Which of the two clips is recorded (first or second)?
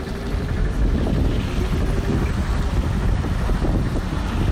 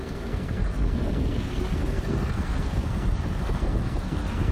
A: first